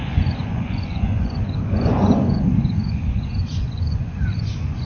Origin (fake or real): fake